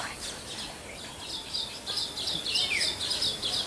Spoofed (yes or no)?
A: no